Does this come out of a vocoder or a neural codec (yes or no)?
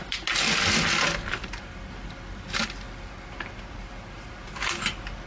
no